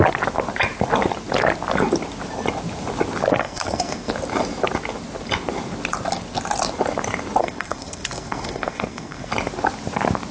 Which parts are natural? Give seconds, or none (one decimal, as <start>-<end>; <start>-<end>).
0.0-3.4; 4.1-7.4; 9.3-10.3